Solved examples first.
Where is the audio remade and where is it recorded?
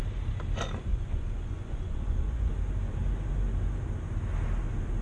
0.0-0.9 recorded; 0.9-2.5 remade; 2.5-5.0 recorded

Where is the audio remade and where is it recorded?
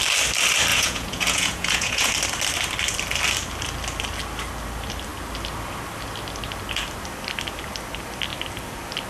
0.0-0.7 recorded; 0.7-2.1 remade; 2.1-9.1 recorded